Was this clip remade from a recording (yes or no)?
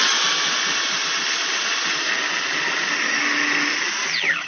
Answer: no